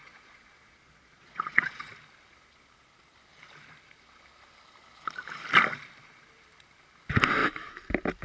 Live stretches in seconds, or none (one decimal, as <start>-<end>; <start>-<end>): 1.9-8.2